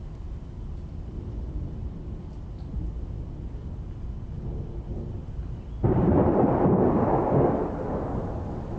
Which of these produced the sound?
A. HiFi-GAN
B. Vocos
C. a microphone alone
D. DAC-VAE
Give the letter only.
C